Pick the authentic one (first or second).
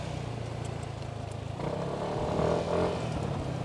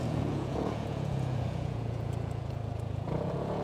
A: first